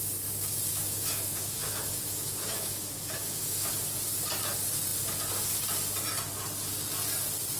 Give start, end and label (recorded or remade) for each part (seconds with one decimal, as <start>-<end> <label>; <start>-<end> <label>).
0.0-0.7 recorded; 0.7-3.7 remade; 3.7-7.6 recorded